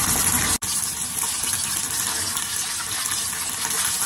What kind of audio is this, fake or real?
real